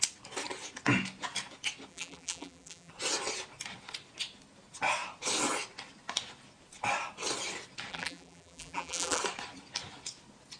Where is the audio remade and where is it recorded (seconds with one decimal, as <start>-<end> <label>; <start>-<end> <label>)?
0.0-1.9 recorded; 1.9-2.9 remade; 2.9-7.9 recorded; 7.9-9.2 remade; 9.2-10.6 recorded